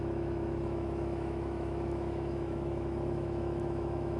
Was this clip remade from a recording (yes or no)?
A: yes